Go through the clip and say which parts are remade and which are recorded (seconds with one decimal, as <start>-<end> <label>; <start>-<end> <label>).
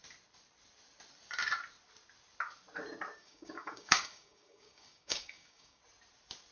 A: 0.0-3.2 recorded; 3.2-5.8 remade; 5.8-6.5 recorded